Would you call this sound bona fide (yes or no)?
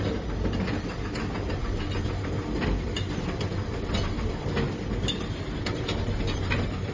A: yes